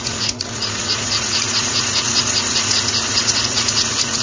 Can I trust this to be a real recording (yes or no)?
no